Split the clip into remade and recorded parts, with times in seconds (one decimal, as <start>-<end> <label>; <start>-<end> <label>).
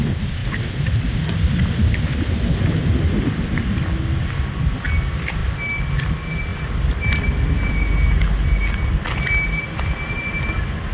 0.0-10.9 recorded